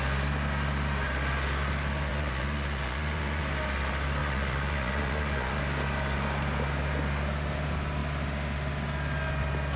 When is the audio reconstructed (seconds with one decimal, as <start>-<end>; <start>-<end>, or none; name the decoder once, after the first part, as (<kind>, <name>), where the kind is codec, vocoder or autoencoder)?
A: 2.1-3.4 (vocoder, Vocos); 4.2-5.6